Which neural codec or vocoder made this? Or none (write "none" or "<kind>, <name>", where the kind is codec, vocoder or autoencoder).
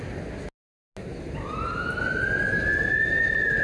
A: none